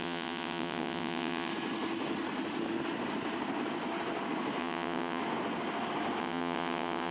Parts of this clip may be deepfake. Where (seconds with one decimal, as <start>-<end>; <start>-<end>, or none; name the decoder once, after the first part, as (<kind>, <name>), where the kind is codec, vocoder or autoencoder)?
0.0-1.5 (vocoder, WaveNeXt); 4.6-5.2; 6.2-7.1